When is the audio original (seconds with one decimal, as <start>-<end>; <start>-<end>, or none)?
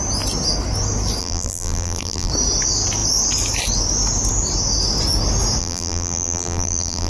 0.0-1.2; 2.3-5.6